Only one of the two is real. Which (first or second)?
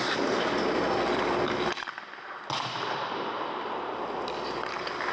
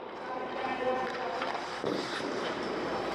first